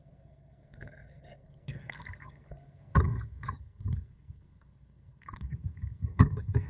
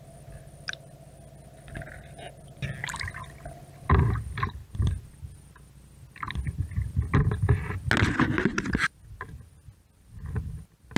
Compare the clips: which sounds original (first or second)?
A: second